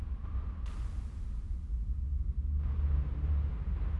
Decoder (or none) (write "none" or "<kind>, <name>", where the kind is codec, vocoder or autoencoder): none